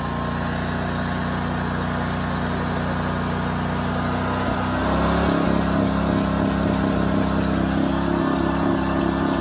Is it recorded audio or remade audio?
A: recorded